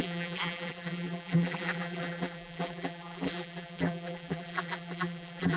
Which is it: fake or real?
fake